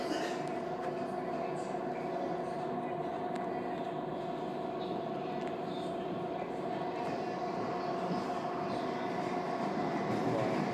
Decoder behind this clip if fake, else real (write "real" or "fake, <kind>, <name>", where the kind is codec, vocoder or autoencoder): real